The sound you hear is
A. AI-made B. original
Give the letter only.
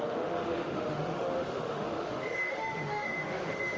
A